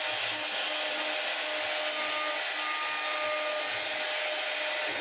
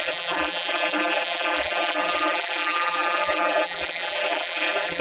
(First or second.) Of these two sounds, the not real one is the second